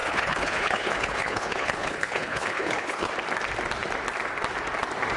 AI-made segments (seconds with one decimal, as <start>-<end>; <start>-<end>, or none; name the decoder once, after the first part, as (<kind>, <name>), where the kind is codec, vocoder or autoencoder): 0.0-3.1 (codec, HILCodec)